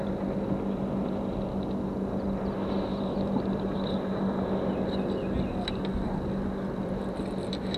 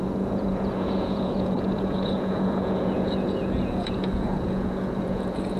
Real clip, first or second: first